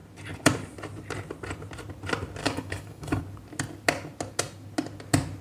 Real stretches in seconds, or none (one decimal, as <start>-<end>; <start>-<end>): 0.0-2.4; 3.2-5.4